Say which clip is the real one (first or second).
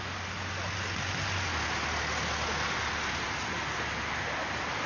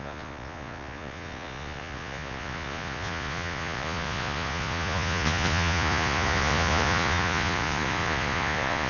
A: first